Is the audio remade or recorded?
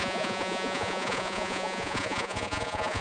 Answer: remade